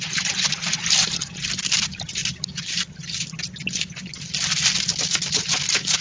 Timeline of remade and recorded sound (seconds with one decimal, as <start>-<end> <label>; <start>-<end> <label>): 0.0-2.2 remade; 2.2-6.0 recorded